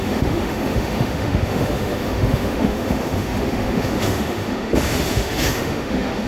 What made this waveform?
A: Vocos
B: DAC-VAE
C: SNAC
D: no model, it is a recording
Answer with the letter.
B